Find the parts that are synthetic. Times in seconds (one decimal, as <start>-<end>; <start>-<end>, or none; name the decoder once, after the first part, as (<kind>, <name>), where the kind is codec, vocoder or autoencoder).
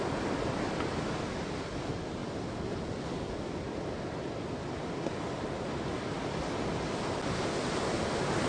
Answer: none